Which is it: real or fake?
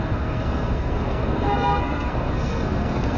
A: fake